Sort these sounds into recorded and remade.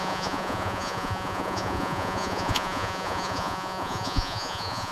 remade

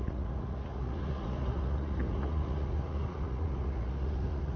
remade